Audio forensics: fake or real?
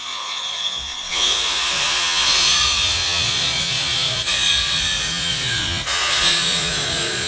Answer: fake